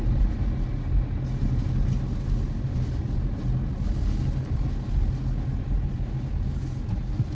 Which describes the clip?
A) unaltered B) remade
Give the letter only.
A